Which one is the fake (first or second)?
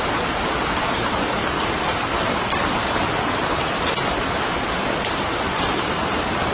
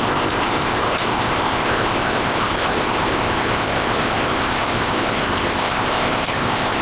second